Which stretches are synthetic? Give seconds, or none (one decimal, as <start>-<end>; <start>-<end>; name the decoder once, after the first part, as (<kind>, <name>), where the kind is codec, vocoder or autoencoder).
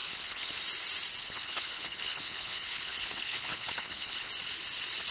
0.0-0.6 (codec, HILCodec); 1.2-4.3